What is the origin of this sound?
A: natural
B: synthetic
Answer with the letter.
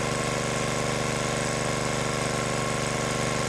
A